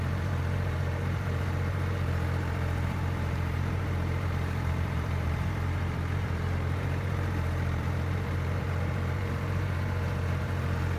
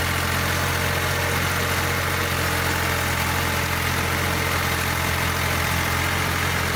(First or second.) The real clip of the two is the second